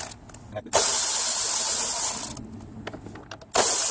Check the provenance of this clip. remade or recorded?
recorded